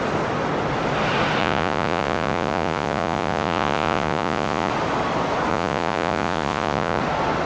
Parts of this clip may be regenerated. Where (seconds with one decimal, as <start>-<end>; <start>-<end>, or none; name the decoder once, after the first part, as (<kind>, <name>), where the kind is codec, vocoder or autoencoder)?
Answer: 1.4-4.7 (vocoder, Vocos); 5.5-7.0